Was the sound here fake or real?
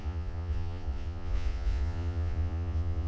fake